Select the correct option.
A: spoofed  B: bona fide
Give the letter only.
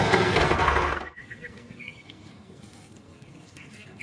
A